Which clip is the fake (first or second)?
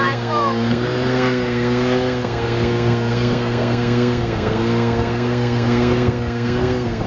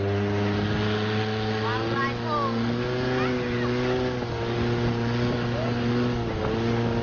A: first